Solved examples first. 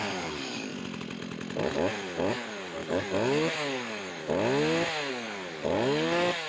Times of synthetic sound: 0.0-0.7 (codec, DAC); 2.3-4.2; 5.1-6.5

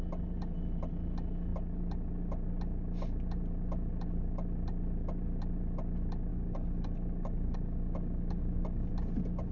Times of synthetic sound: 6.3-8.9 (codec, DAC)

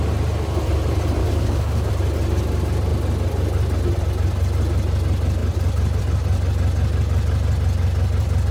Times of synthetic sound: 1.2-1.9 (codec, DAC)

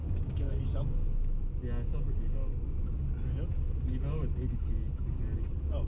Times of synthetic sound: 0.0-0.6 (codec, DAC)

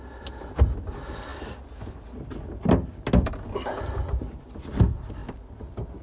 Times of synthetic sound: none